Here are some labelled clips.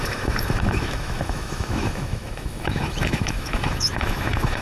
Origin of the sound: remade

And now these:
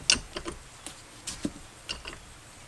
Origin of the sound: recorded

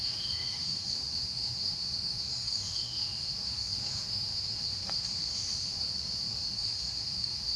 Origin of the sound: remade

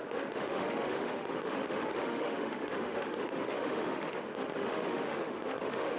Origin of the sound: remade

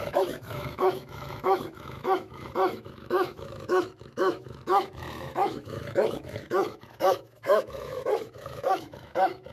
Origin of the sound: remade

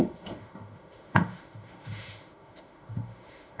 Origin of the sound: remade